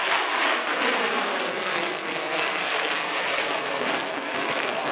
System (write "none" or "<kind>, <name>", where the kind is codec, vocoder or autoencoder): codec, SNAC